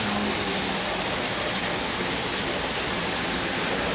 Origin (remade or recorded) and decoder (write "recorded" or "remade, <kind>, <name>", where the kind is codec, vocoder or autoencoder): recorded